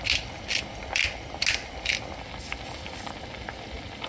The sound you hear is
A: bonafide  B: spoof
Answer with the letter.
A